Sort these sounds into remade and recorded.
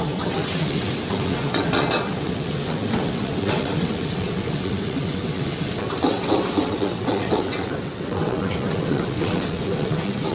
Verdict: remade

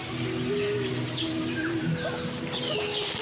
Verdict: recorded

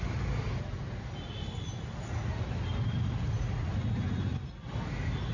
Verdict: recorded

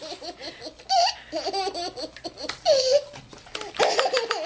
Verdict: recorded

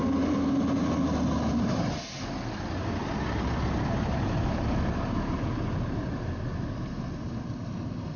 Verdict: recorded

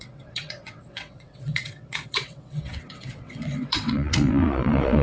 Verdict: remade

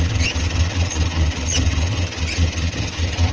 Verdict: remade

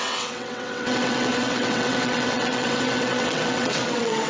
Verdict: remade